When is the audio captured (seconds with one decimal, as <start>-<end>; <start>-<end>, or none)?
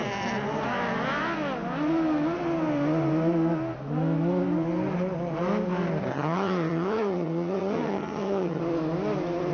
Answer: 0.0-6.1; 8.6-9.5